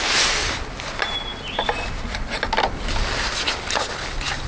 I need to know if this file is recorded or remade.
recorded